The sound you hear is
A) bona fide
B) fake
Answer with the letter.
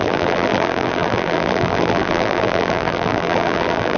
B